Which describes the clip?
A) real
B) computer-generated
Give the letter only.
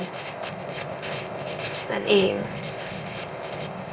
B